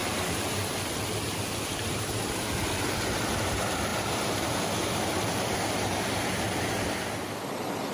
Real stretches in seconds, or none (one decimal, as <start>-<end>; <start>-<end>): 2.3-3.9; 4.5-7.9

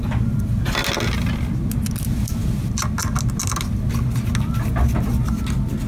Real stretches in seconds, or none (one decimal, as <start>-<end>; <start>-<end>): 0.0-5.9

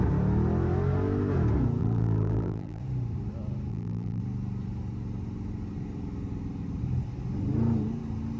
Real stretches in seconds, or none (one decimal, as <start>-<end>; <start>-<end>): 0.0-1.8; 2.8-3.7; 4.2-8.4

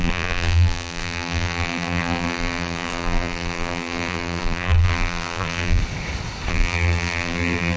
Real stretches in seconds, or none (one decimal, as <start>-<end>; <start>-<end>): 5.8-6.5

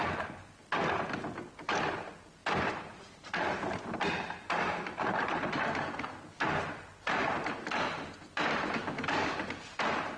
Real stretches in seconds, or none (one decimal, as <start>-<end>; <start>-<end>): 0.0-2.4; 4.0-7.2; 9.3-10.2